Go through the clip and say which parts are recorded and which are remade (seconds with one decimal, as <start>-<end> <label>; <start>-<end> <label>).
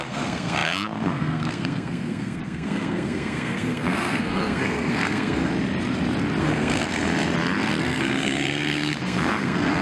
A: 0.0-5.5 remade; 5.5-6.4 recorded; 6.4-7.0 remade; 7.0-7.8 recorded; 7.8-9.8 remade